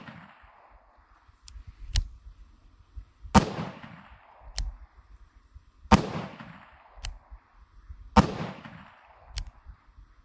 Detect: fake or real real